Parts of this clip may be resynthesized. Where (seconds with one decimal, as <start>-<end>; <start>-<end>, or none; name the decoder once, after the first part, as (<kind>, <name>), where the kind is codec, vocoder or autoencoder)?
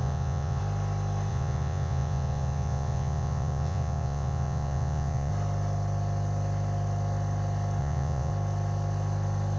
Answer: 0.0-0.6 (vocoder, Vocos); 1.3-5.3; 7.8-8.3